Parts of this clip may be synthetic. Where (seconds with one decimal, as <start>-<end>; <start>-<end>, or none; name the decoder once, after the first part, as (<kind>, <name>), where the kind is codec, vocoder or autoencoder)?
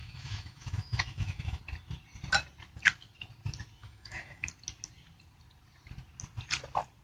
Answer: 0.0-1.6 (autoencoder, DAC-VAE); 3.8-4.5